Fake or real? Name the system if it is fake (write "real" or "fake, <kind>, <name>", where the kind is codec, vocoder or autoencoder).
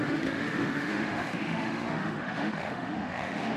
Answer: fake, autoencoder, DAC-VAE